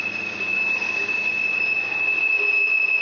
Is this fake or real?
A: real